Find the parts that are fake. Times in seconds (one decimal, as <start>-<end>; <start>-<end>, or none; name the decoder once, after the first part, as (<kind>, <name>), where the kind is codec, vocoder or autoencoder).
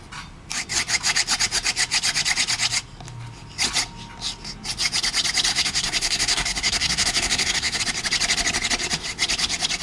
5.5-7.8 (codec, SNAC)